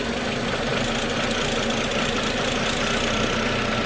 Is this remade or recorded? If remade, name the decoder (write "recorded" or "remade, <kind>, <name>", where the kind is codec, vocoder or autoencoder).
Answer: recorded